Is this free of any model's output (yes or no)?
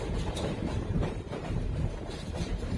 no